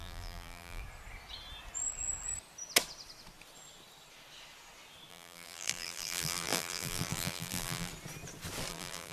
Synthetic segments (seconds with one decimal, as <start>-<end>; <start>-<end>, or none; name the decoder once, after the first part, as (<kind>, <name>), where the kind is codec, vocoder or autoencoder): 0.0-0.8 (vocoder, BigVGAN v2); 5.1-7.9; 8.7-9.1